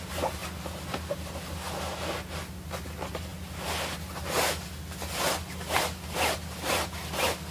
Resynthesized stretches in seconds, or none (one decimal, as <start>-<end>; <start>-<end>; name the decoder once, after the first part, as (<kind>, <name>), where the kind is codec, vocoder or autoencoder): none